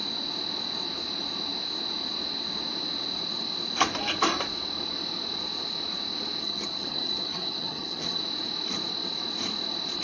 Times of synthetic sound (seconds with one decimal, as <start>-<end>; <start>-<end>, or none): 6.4-8.2